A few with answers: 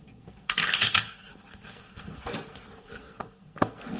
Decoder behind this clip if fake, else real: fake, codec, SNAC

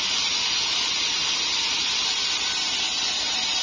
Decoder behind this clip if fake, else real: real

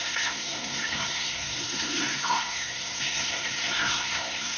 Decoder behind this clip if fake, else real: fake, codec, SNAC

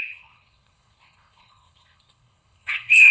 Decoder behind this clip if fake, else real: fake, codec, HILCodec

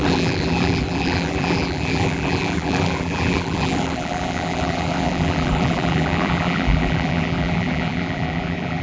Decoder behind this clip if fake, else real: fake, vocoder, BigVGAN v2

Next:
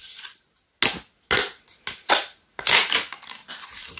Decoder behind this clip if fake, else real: real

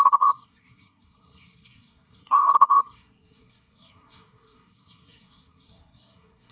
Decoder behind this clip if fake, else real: fake, codec, SNAC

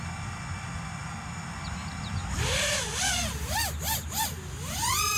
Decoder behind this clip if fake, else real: real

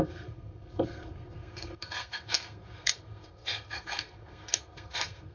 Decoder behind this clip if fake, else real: fake, codec, SNAC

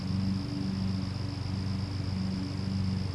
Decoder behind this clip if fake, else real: real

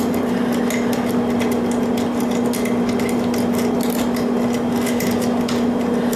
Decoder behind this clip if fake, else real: real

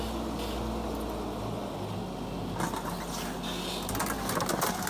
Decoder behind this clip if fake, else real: real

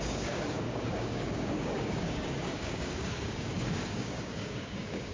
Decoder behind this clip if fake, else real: fake, codec, DAC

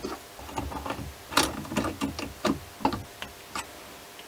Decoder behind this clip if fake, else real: real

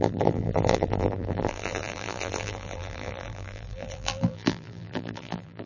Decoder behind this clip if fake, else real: fake, vocoder, BigVGAN v2